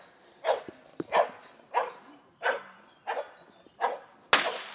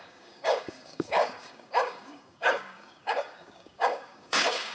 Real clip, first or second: first